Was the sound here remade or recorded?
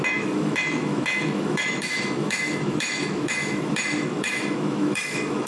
remade